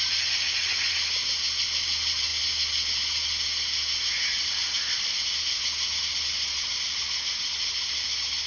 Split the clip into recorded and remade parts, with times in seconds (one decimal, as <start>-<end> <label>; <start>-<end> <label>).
0.0-8.5 recorded